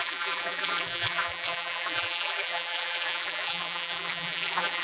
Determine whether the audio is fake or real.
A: fake